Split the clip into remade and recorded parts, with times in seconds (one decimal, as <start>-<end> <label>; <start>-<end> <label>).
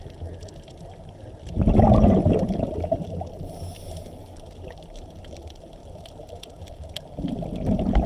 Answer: 0.0-8.1 recorded